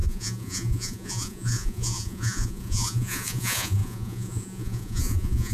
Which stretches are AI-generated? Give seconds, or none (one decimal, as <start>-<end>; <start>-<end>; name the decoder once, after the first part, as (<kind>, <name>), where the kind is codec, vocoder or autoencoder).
0.0-5.5 (vocoder, Vocos)